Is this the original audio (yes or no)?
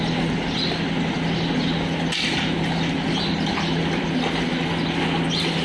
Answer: yes